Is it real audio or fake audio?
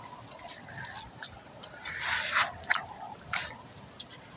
real